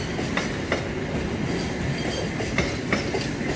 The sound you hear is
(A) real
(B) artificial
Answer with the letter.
A